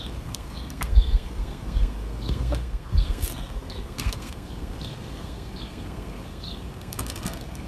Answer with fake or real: fake